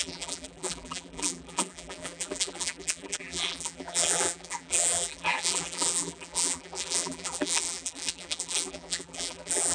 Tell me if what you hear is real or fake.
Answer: fake